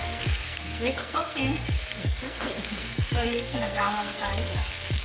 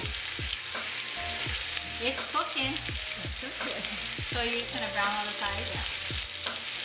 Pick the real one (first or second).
second